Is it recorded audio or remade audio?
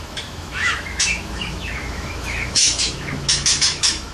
remade